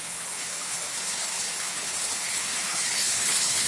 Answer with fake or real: fake